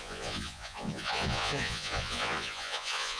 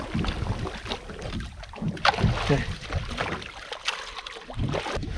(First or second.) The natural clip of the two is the second